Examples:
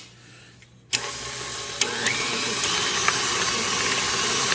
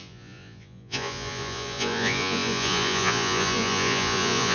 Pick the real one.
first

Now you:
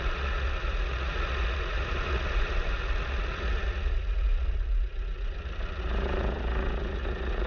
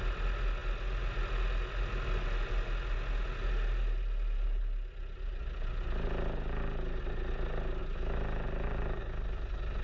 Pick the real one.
second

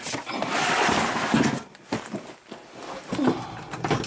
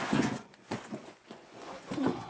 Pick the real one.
first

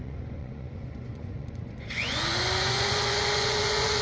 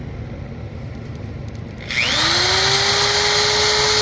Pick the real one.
second